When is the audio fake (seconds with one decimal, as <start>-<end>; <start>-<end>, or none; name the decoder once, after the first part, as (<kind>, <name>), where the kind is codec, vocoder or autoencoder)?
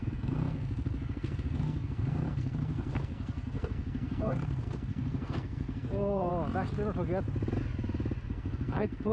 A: 0.0-6.3 (codec, SNAC); 8.3-9.1